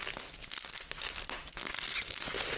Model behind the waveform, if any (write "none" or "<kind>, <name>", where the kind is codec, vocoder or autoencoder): none